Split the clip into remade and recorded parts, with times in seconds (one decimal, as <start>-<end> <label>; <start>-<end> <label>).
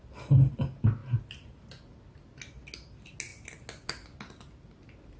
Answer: 0.0-5.2 recorded